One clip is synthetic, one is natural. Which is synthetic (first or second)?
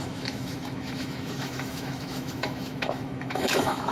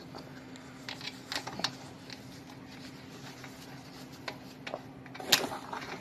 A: first